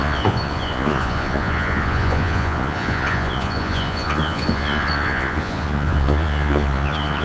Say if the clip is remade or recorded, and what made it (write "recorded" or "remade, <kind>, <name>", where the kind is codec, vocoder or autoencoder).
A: remade, vocoder, Vocos